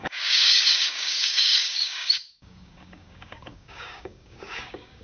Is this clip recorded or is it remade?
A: remade